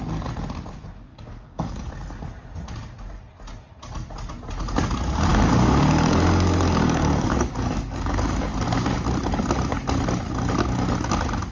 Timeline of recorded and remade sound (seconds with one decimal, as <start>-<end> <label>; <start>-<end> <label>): 0.0-1.1 recorded; 1.1-1.9 remade; 1.9-5.3 recorded; 5.3-8.5 remade; 8.5-11.5 recorded

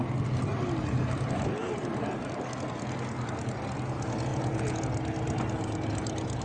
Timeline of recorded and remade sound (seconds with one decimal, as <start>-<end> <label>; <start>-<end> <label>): 0.0-4.3 recorded; 4.3-4.8 remade; 4.8-6.4 recorded

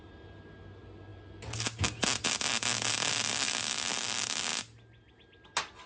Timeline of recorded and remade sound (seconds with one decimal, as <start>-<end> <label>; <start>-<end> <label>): 0.0-5.9 recorded

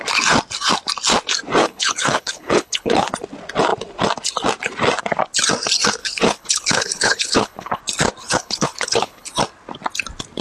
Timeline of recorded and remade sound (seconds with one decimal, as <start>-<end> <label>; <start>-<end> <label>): 0.0-1.6 recorded; 1.6-3.1 remade; 3.1-6.0 recorded; 6.0-7.8 remade; 7.8-8.2 recorded; 8.2-9.3 remade; 9.3-10.4 recorded

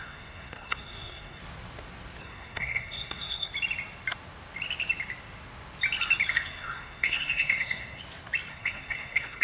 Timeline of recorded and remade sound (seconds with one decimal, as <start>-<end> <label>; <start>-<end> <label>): 0.0-1.4 remade; 1.4-2.2 recorded; 2.2-3.5 remade; 3.5-6.3 recorded; 6.3-8.0 remade; 8.0-8.5 recorded; 8.5-9.4 remade

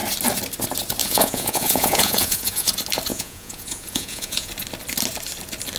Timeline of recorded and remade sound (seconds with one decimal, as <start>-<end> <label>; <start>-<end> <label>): 0.0-1.0 recorded; 1.0-2.7 remade; 2.7-3.1 recorded; 3.1-4.5 remade; 4.5-5.8 recorded